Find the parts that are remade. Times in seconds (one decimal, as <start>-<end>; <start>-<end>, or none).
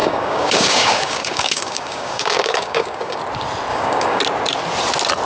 0.0-3.2; 3.7-4.2